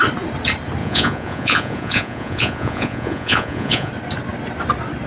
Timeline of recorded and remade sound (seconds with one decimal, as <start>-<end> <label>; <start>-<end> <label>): 0.0-0.8 recorded; 0.8-3.9 remade; 3.9-5.1 recorded